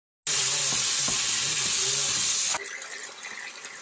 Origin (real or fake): real